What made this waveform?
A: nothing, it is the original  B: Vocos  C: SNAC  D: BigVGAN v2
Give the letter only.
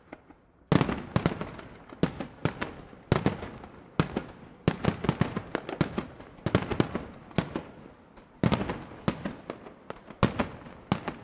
A